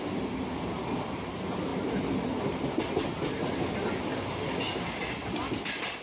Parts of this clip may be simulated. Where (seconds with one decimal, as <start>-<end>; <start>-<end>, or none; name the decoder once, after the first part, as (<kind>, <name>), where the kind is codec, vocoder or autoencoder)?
none

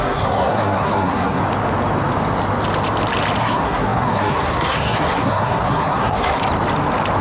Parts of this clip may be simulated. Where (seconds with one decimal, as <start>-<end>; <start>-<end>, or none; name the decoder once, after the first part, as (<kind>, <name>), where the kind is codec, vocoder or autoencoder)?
0.0-1.4 (codec, SNAC); 3.4-6.4

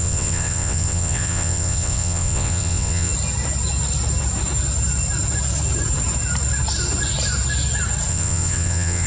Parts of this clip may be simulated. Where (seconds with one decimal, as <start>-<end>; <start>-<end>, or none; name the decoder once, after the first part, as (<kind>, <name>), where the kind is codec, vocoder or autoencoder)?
0.0-3.1 (vocoder, WaveNeXt); 8.1-9.1

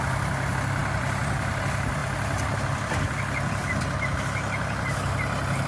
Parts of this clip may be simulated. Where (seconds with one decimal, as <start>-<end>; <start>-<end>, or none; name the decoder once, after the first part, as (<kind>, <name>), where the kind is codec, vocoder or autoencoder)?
0.8-1.6 (vocoder, BigVGAN v2)